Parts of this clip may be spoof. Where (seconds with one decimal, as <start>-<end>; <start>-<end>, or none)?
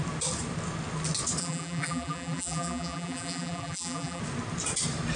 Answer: 1.4-4.2